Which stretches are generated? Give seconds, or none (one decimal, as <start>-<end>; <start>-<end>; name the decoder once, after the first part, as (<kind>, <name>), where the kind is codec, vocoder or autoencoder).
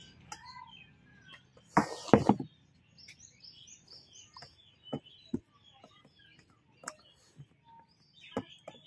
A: none